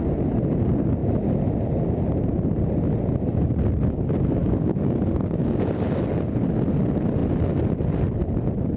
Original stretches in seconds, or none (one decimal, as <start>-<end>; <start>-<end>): 0.0-4.4; 5.7-8.8